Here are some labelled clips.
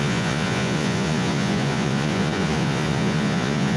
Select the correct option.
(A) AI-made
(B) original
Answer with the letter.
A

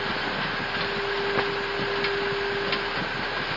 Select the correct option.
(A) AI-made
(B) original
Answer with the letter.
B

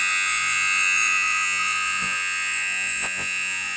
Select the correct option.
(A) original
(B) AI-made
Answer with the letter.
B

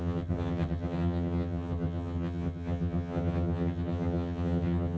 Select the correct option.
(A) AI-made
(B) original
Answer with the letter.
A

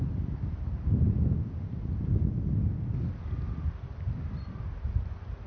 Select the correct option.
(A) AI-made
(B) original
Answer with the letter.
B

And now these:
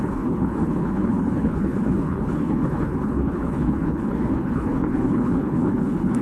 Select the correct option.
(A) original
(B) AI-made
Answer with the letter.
B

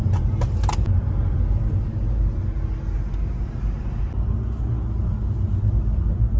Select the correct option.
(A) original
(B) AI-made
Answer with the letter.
A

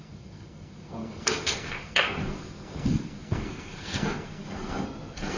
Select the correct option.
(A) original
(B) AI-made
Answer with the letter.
B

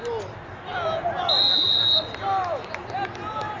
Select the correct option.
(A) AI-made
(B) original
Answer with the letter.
B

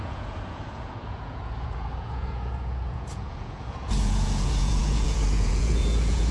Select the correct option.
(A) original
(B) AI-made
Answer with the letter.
B